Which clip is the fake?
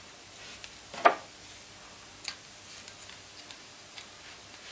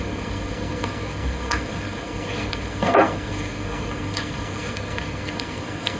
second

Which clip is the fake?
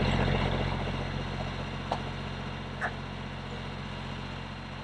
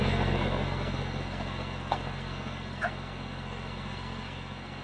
second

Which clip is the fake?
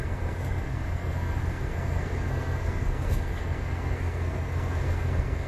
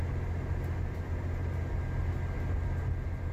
first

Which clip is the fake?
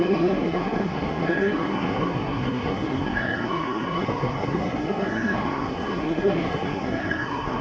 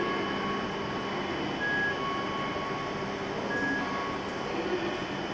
first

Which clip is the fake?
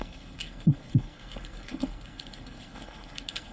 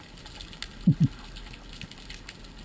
first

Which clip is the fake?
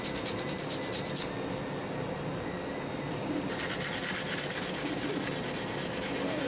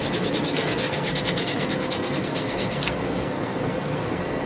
second